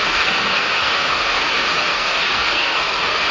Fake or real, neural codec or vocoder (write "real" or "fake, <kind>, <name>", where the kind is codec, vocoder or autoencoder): fake, codec, SNAC